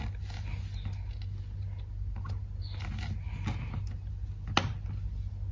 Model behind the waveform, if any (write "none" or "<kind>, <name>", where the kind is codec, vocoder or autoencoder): none